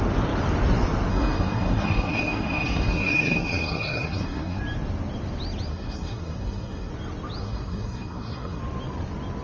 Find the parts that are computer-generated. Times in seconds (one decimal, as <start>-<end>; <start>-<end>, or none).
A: 1.1-4.6; 5.7-6.9; 7.4-8.6